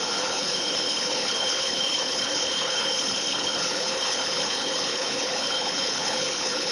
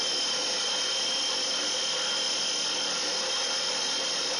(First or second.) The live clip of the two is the second